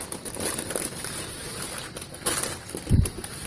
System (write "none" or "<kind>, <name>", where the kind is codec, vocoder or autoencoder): none